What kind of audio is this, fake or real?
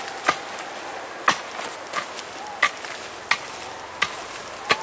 real